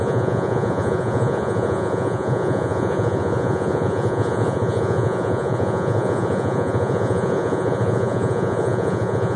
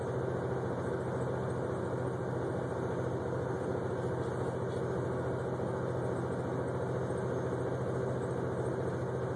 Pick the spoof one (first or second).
first